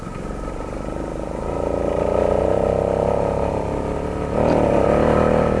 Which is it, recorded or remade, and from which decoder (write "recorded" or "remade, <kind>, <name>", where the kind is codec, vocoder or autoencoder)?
recorded